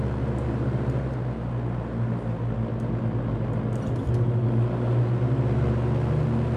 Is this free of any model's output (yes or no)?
yes